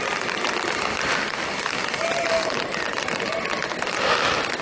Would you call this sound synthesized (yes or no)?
no